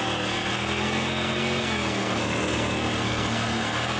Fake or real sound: fake